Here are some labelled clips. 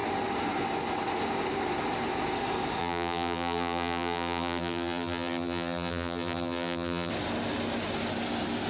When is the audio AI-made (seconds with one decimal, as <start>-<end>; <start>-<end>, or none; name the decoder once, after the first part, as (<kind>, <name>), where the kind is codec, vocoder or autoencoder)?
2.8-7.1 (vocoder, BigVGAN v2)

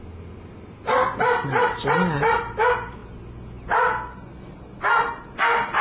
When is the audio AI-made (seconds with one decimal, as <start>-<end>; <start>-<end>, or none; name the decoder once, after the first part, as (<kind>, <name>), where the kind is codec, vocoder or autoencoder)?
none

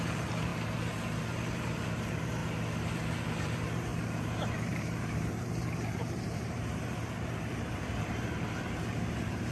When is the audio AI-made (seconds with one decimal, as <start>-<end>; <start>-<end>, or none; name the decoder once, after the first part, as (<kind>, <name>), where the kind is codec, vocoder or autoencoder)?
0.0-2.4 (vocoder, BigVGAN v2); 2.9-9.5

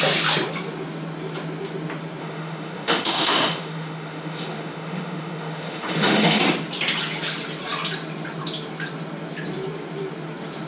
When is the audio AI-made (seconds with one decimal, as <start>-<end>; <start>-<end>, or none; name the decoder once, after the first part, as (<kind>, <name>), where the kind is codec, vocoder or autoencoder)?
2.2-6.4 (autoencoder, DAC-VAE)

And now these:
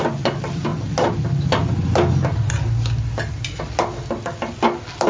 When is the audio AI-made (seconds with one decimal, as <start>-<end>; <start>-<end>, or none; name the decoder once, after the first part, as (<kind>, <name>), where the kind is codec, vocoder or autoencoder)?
none

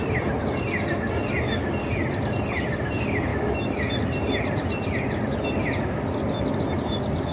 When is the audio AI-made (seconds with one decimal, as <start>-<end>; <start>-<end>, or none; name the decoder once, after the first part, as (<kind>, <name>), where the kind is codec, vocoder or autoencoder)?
3.3-3.9 (autoencoder, DAC-VAE)

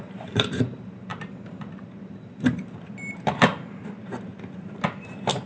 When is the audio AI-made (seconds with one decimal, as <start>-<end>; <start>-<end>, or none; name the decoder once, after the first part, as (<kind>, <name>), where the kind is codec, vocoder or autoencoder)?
0.0-5.5 (vocoder, BigVGAN v2)